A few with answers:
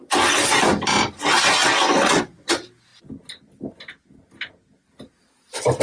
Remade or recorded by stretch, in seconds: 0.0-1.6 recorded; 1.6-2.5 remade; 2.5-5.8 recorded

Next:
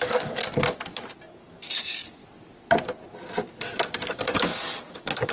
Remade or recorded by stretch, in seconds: 0.0-0.4 remade; 0.4-1.3 recorded; 1.3-2.2 remade; 2.2-4.1 recorded; 4.1-5.3 remade

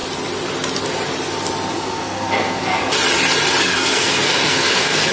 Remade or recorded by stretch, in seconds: 0.0-1.7 recorded; 1.7-2.8 remade; 2.8-3.6 recorded; 3.6-5.1 remade

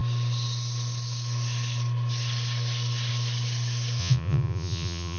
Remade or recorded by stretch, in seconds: 0.0-4.0 recorded; 4.0-5.2 remade

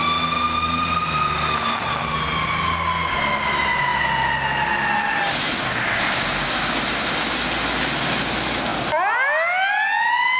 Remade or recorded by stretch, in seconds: 0.0-10.4 recorded